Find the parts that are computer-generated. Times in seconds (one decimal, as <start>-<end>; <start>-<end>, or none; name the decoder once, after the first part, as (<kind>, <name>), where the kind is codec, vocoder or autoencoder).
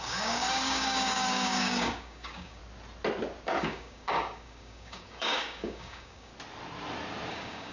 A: 0.0-2.6 (codec, DAC); 3.6-6.3; 7.3-7.7